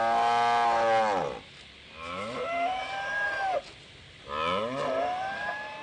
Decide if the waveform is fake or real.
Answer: real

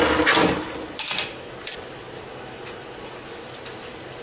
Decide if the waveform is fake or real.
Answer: real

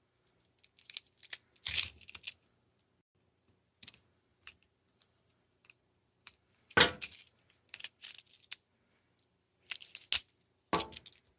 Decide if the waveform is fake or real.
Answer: real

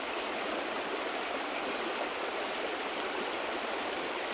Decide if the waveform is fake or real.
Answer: real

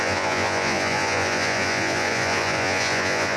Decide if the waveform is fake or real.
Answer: fake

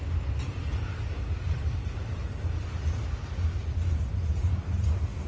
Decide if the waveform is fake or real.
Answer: real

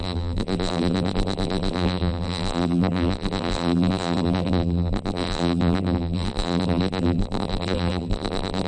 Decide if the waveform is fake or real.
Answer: fake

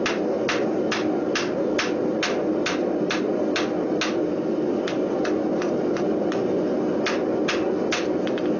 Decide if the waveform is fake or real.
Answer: real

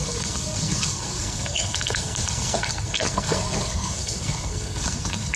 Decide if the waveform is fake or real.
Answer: fake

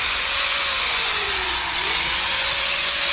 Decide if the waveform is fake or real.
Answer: fake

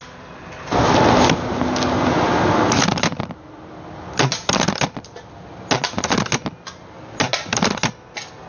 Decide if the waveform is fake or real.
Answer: real